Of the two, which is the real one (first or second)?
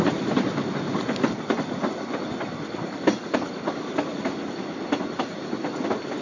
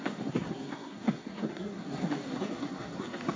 first